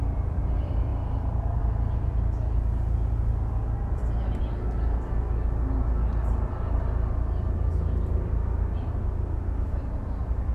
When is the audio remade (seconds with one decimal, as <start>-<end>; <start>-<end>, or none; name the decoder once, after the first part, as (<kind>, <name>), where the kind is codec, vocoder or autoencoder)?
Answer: none